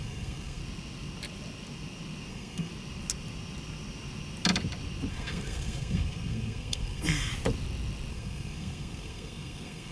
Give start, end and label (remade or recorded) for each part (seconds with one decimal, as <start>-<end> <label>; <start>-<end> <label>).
0.0-0.6 remade; 0.6-2.3 recorded; 2.3-2.7 remade; 2.7-5.1 recorded; 5.1-7.3 remade; 7.3-8.1 recorded; 8.1-9.9 remade